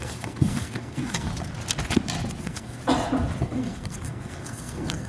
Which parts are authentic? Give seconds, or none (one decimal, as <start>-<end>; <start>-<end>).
1.3-2.4; 2.8-3.4